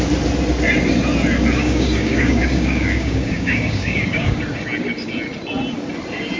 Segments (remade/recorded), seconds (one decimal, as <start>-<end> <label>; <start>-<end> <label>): 0.0-1.6 recorded; 1.6-4.4 remade; 4.4-6.4 recorded